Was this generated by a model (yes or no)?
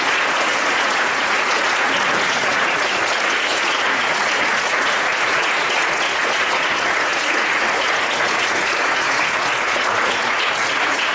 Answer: yes